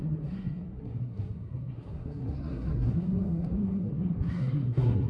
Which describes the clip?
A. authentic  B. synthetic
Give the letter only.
B